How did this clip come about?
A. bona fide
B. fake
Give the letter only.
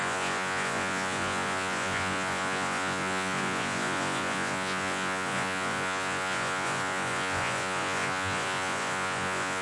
B